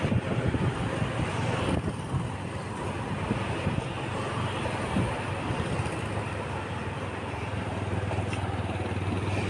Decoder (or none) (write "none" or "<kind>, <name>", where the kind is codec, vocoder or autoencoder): none